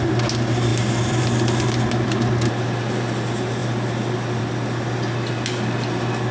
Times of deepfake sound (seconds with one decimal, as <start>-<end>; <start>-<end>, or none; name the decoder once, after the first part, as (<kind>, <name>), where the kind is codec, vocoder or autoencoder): none